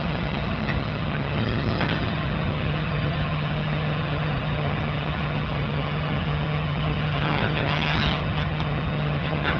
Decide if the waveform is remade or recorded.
remade